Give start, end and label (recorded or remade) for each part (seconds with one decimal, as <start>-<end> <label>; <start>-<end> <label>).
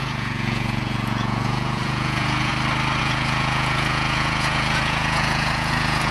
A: 0.0-2.5 remade; 2.5-3.0 recorded; 3.0-6.1 remade